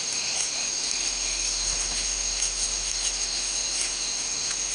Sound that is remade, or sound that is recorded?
remade